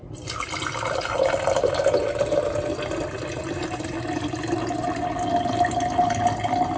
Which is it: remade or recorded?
recorded